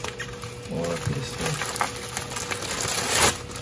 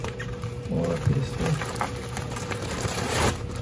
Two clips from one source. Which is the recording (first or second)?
first